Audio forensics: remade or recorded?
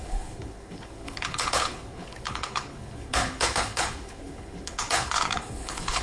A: remade